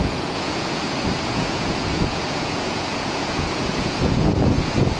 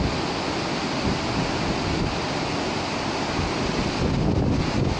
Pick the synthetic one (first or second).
first